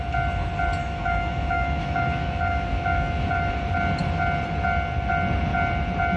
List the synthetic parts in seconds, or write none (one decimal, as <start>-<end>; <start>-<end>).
0.8-3.5